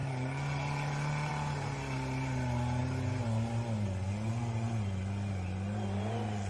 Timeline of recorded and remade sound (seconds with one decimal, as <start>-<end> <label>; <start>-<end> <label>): 0.0-6.5 recorded